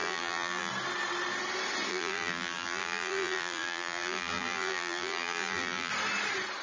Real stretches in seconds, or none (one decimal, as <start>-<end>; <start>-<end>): 0.7-1.9; 5.9-6.6